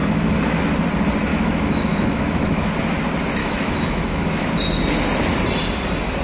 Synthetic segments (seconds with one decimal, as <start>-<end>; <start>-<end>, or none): 0.0-0.6; 1.3-2.7; 3.4-4.5